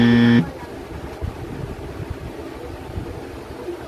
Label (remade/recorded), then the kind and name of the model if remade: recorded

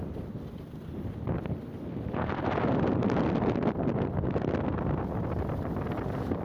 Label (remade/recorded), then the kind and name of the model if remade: recorded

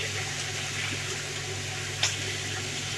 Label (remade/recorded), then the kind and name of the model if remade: recorded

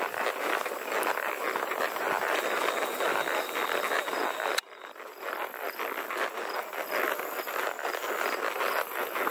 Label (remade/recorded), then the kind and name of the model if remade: recorded